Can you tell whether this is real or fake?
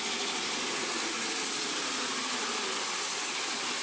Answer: real